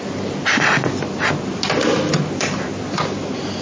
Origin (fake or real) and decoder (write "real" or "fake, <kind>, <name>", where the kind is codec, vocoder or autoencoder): real